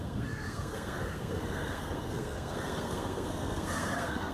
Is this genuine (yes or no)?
no